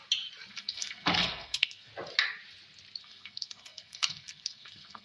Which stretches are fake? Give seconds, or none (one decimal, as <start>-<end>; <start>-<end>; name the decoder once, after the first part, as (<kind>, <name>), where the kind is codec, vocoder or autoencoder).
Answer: 0.5-1.9 (codec, SNAC); 3.0-5.0